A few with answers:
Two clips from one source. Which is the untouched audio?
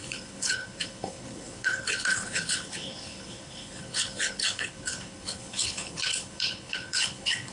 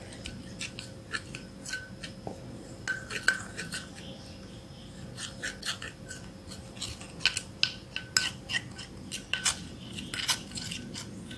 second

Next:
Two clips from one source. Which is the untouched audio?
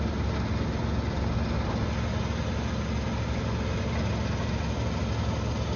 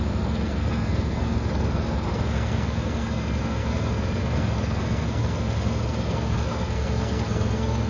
first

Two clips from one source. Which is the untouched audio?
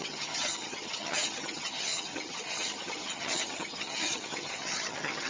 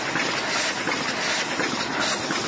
second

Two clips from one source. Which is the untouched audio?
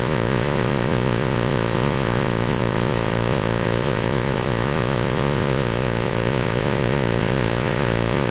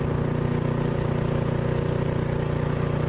second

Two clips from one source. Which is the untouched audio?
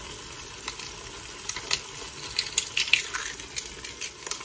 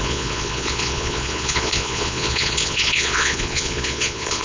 first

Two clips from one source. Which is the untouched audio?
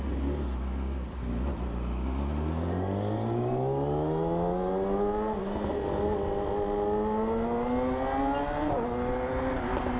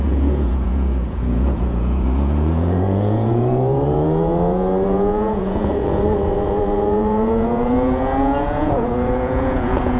first